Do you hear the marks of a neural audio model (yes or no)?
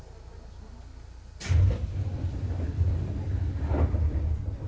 no